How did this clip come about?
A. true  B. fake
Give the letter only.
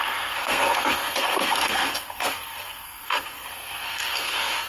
B